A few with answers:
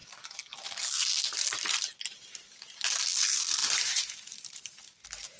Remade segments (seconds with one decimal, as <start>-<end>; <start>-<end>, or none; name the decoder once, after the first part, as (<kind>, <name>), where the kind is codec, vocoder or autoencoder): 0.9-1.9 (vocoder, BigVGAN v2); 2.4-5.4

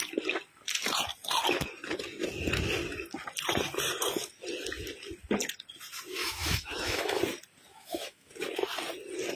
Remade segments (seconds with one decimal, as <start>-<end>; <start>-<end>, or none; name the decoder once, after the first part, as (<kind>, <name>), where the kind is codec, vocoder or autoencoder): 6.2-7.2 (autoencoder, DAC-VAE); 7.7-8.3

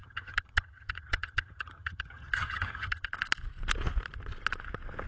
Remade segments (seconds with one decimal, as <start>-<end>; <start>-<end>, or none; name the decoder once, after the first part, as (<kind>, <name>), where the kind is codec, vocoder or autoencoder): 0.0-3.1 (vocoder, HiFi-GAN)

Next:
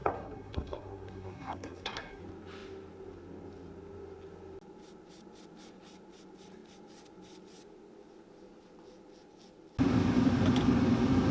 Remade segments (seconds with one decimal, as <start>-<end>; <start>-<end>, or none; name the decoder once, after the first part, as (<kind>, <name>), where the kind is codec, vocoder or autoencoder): 0.0-2.2 (codec, SNAC)

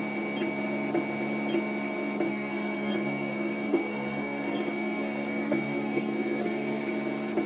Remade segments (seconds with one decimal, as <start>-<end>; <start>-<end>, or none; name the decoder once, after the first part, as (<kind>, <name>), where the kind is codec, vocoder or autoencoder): 2.3-6.8 (codec, SNAC)

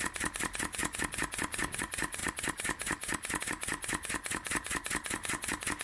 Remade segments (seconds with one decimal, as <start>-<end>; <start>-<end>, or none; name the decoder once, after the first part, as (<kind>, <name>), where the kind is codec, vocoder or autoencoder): 0.0-0.8 (vocoder, BigVGAN v2); 1.8-2.2; 3.4-5.8